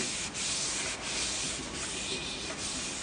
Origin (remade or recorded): recorded